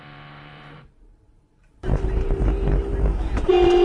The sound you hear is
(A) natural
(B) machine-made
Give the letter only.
B